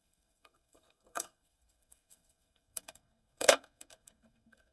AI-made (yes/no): yes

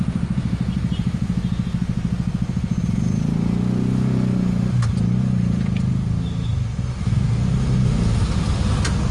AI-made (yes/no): no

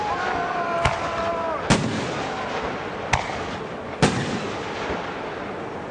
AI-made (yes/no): no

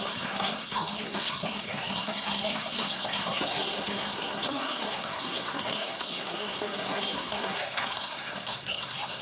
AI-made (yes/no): yes